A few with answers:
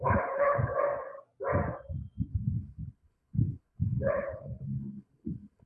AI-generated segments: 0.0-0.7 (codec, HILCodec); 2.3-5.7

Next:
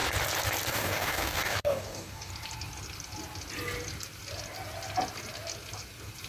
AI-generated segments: 0.7-2.3 (codec, DAC)

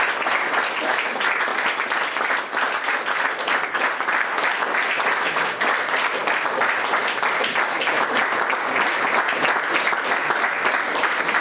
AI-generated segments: 0.0-1.5 (vocoder, BigVGAN v2); 5.4-11.4

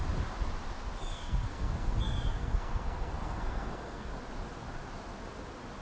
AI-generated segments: 1.0-4.1 (codec, SNAC)

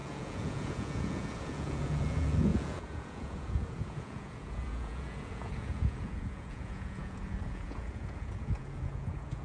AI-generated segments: 0.0-9.4 (vocoder, Vocos)